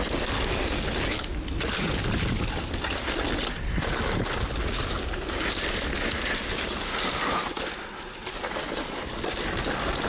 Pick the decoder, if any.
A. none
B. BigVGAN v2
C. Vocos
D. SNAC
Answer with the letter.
A